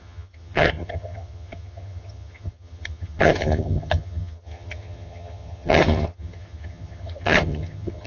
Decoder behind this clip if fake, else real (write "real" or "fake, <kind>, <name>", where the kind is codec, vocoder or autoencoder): fake, vocoder, HiFi-GAN